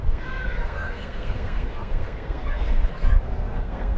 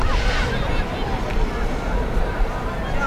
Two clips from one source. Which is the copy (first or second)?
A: first